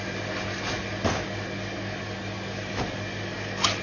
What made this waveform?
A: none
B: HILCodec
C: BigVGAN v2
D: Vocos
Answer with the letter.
A